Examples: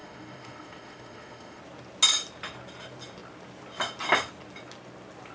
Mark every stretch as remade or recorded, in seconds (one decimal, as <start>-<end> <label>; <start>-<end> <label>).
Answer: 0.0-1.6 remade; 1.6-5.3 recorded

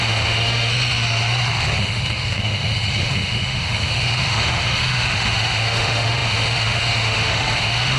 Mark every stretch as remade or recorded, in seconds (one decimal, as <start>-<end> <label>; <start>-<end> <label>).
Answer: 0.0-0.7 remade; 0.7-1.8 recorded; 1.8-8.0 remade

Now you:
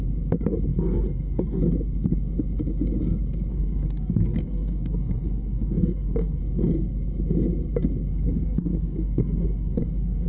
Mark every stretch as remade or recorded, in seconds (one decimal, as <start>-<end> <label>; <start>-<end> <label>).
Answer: 0.0-0.7 recorded; 0.7-1.6 remade; 1.6-3.5 recorded; 3.5-6.4 remade; 6.4-8.1 recorded; 8.1-10.3 remade